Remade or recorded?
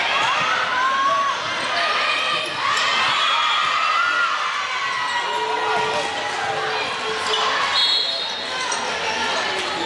recorded